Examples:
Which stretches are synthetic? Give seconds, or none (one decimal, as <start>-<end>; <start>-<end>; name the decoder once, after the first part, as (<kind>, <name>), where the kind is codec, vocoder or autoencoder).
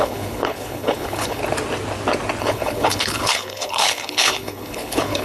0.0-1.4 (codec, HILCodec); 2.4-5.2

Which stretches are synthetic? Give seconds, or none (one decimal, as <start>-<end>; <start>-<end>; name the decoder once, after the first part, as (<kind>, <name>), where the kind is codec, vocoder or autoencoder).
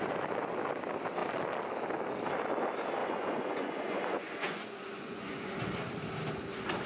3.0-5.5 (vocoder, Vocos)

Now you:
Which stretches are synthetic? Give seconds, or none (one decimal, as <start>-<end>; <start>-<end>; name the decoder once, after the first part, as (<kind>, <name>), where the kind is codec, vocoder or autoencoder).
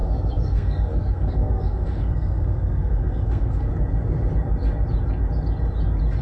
0.0-3.7 (codec, SNAC)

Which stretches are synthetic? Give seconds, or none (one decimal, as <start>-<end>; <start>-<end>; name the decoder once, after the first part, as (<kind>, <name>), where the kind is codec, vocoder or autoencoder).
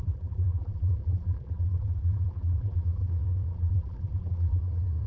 0.0-3.1 (vocoder, BigVGAN v2); 3.5-4.6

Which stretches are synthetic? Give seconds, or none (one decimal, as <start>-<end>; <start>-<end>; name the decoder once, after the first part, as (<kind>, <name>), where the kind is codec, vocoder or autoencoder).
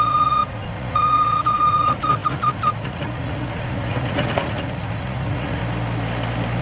0.0-5.6 (vocoder, Vocos)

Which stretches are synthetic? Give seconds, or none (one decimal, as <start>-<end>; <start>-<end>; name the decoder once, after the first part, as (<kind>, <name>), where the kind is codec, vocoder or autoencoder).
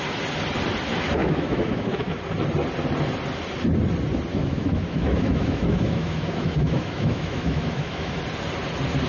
1.2-2.2 (autoencoder, DAC-VAE); 4.3-8.2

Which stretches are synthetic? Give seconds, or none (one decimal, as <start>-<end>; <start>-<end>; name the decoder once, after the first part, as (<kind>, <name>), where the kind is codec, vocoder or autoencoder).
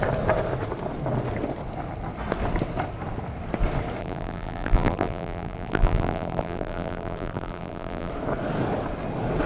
4.0-8.1 (vocoder, BigVGAN v2)